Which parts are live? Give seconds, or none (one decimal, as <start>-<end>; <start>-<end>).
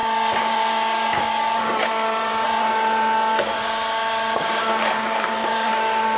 2.3-3.3